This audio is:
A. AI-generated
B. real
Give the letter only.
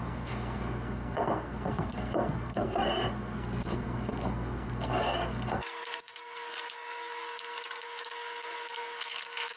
A